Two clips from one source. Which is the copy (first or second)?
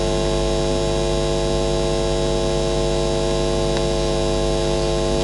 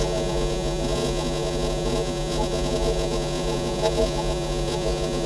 second